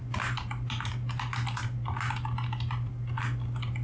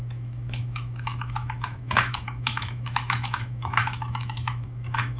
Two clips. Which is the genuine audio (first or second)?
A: first